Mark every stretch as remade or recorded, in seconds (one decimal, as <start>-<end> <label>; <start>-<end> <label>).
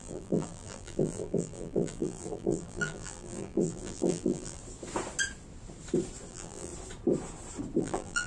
0.0-4.6 remade; 4.6-6.3 recorded; 6.3-6.7 remade; 6.7-7.8 recorded; 7.8-8.3 remade